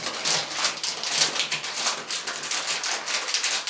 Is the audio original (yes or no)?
yes